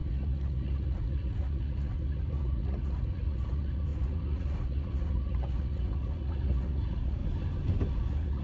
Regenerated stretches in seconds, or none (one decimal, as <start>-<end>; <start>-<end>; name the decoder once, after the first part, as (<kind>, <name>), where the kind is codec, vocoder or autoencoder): 0.0-7.2 (vocoder, Vocos); 7.9-8.4